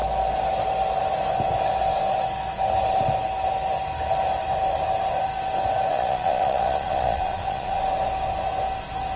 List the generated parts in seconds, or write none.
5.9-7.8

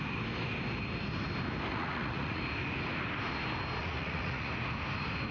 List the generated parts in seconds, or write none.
1.7-2.4; 3.8-4.5

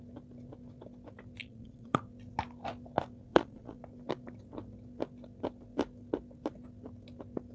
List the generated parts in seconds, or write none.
1.4-2.0; 3.3-3.8

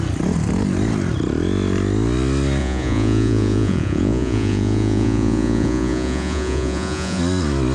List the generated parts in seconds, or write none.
2.6-7.2